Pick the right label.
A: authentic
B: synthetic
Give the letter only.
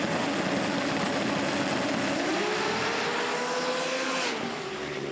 A